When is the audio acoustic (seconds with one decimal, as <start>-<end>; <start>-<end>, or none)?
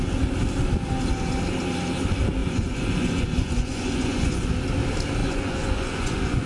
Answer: 0.0-2.4; 4.4-5.2